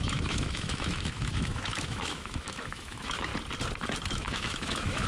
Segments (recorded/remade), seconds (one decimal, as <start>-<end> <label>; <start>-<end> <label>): 0.0-3.3 remade; 3.3-4.1 recorded; 4.1-5.1 remade